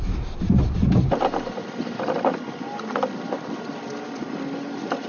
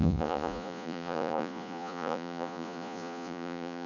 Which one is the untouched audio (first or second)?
first